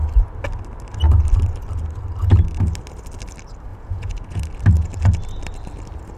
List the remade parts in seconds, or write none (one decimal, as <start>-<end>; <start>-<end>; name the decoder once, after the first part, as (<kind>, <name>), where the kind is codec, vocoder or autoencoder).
3.7-4.4 (vocoder, Vocos)